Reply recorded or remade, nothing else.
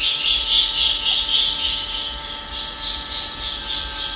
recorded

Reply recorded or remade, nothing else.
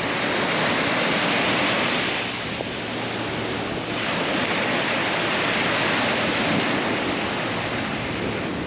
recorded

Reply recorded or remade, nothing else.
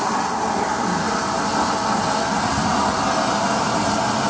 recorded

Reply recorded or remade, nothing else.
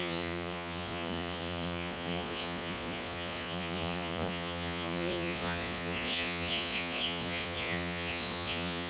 remade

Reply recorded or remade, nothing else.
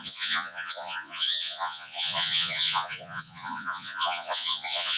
remade